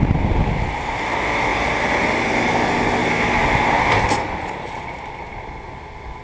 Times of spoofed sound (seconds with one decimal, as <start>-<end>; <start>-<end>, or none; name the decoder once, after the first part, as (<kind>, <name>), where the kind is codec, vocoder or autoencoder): none